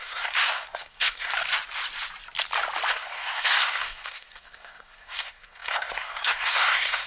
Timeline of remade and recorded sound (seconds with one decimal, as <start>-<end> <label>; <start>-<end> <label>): 0.0-1.3 remade; 1.3-2.9 recorded; 2.9-7.1 remade